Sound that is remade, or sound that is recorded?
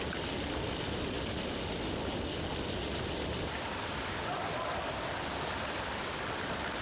recorded